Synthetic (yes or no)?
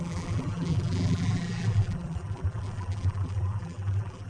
yes